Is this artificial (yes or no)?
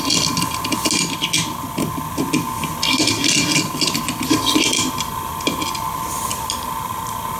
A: no